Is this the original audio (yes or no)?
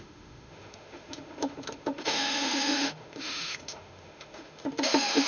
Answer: no